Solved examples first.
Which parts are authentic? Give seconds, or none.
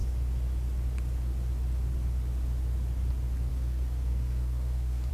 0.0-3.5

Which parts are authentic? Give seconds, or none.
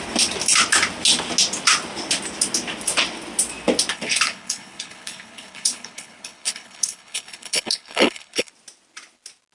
0.0-3.9; 8.5-9.5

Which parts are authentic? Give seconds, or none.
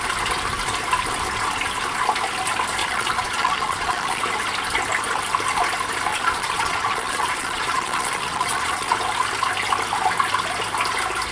0.0-2.8; 4.2-6.1; 8.9-11.3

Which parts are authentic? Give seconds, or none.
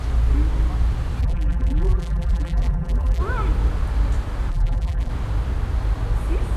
0.0-1.2; 3.2-4.5; 5.1-6.6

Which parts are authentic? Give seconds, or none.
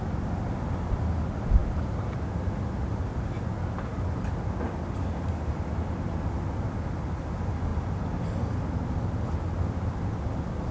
0.0-10.7